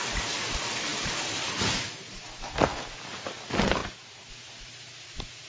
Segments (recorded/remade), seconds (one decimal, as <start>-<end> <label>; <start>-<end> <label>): 0.0-5.5 recorded